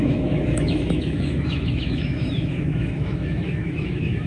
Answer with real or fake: fake